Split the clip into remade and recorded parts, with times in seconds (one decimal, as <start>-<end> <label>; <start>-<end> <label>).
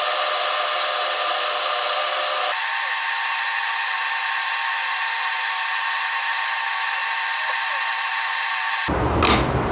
0.0-9.7 recorded